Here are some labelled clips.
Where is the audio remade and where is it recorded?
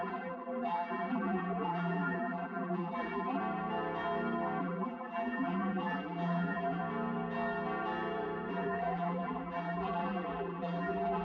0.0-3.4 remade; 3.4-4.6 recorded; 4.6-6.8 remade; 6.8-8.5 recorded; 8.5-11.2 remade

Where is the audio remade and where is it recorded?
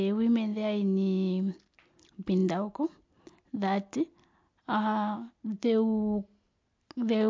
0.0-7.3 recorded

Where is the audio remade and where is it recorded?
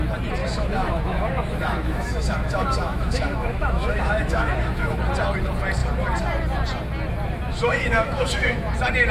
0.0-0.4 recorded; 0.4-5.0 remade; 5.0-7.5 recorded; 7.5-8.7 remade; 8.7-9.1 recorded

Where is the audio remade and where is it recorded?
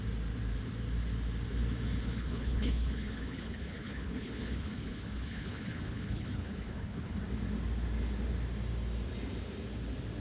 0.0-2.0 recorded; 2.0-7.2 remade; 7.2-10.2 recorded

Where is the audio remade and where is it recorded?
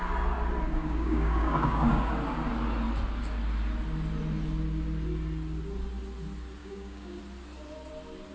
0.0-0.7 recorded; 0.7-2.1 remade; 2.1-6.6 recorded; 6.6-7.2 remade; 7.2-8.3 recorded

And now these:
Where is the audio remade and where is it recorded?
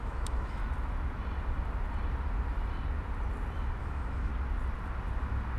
0.0-0.6 remade; 0.6-3.8 recorded; 3.8-4.3 remade; 4.3-5.6 recorded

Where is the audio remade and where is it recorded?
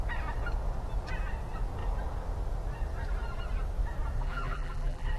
0.0-4.2 recorded; 4.2-5.2 remade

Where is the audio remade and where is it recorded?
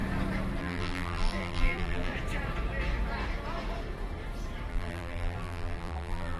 0.0-0.6 recorded; 0.6-2.1 remade; 2.1-4.7 recorded; 4.7-6.4 remade